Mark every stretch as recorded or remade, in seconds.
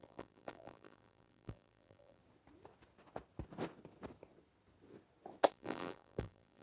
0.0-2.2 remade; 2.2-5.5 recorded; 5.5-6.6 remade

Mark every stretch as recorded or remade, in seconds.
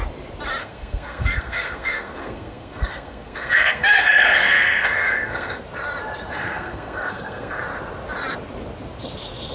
0.0-0.6 recorded; 0.6-5.6 remade; 5.6-6.4 recorded; 6.4-7.6 remade; 7.6-9.5 recorded